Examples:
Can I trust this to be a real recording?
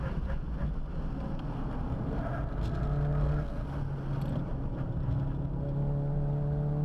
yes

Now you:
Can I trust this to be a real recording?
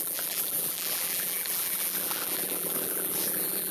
no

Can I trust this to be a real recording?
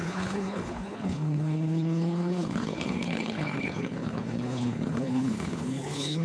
no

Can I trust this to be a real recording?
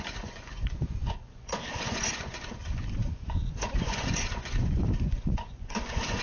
no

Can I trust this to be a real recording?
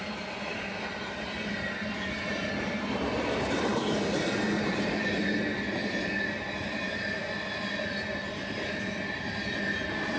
yes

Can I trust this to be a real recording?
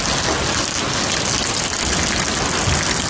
yes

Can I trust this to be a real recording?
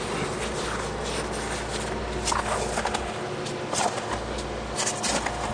yes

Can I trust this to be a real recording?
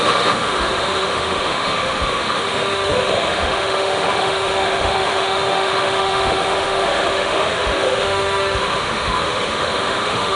no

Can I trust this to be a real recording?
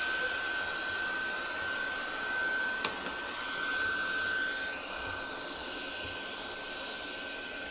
yes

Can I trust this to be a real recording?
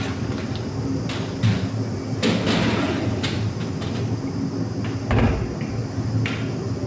yes